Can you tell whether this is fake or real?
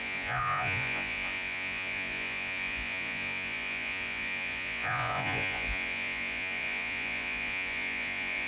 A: fake